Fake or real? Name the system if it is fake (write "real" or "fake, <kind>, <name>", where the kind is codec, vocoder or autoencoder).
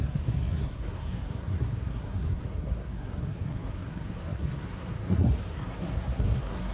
fake, codec, SNAC